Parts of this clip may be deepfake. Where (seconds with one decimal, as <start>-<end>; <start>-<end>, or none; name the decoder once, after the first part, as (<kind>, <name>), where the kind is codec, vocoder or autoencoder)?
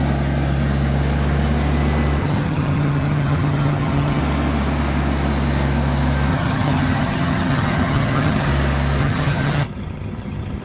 2.2-4.2 (vocoder, HiFi-GAN); 6.3-8.5; 9.0-10.6